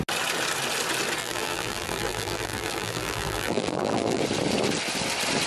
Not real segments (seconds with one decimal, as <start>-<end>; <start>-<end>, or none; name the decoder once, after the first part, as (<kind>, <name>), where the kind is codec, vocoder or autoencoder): 1.2-4.2 (vocoder, BigVGAN v2)